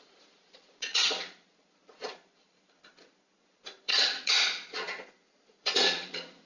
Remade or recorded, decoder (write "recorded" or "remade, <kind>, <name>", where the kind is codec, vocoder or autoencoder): remade, vocoder, Vocos